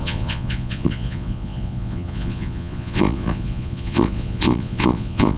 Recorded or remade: remade